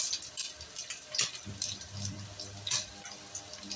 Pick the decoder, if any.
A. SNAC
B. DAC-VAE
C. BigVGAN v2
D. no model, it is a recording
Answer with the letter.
D